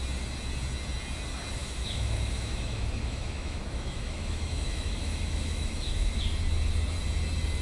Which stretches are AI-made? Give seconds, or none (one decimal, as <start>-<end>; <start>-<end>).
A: 1.6-6.2